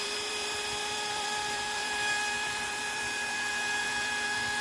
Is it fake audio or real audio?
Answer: fake